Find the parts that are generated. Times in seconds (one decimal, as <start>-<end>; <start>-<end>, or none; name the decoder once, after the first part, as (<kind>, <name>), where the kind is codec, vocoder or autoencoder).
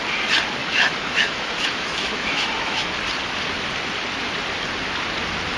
0.6-2.9 (autoencoder, DAC-VAE)